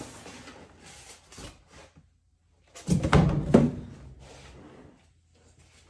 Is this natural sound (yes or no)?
yes